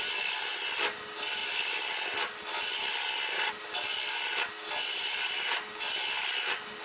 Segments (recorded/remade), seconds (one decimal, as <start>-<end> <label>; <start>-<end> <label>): 0.0-6.8 recorded